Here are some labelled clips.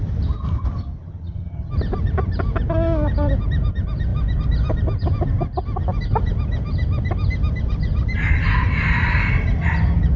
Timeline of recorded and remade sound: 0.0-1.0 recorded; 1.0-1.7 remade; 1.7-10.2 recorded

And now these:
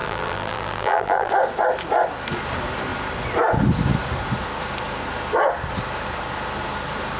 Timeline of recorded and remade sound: 0.0-1.3 remade; 1.3-7.2 recorded